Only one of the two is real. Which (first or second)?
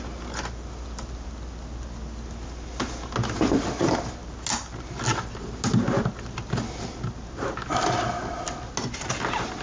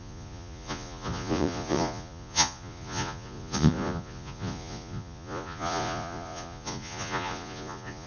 first